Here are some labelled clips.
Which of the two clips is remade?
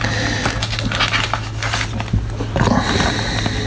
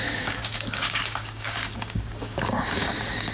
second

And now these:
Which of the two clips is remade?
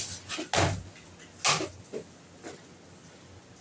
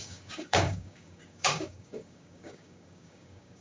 second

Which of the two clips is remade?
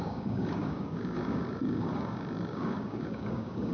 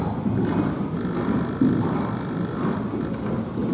first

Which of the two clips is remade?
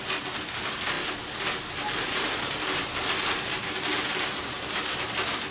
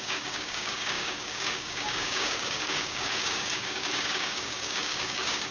second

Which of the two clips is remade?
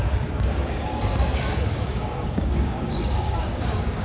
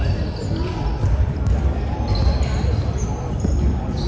first